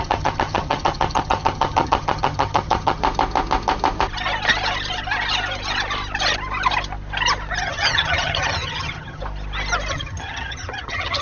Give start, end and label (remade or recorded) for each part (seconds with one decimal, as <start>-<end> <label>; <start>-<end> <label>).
0.0-3.0 remade; 3.0-7.6 recorded; 7.6-9.2 remade; 9.2-9.9 recorded; 9.9-11.2 remade